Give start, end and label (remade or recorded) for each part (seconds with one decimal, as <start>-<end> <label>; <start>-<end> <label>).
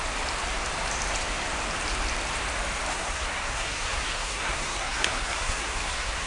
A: 0.0-2.9 recorded; 2.9-6.3 remade